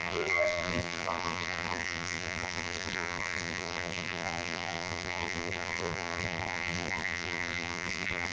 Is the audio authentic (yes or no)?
no